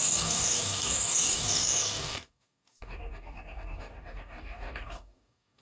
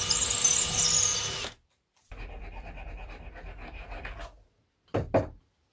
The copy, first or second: first